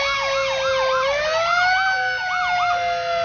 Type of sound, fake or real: real